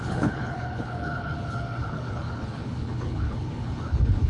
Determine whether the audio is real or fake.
fake